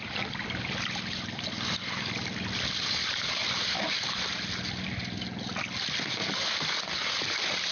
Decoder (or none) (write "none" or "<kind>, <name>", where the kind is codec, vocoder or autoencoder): none